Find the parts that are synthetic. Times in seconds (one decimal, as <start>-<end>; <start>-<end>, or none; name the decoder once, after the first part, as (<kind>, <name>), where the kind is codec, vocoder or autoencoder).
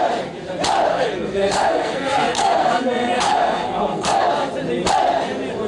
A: 0.9-4.3 (codec, SNAC)